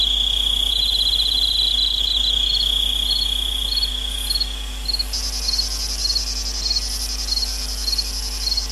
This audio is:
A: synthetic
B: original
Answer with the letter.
B